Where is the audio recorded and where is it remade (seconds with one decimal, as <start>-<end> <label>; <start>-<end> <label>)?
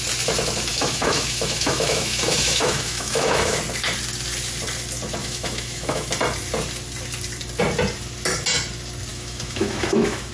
0.0-0.7 recorded; 0.7-3.6 remade; 3.6-5.2 recorded; 5.2-6.1 remade; 6.1-9.1 recorded; 9.1-10.3 remade